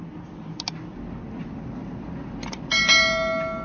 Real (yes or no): yes